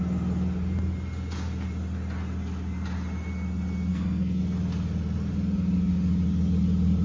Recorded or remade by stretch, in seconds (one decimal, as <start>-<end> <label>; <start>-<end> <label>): 0.0-3.9 recorded; 3.9-4.4 remade; 4.4-7.0 recorded